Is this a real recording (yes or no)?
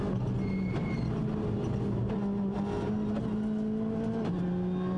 yes